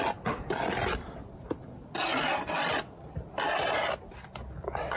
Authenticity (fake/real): real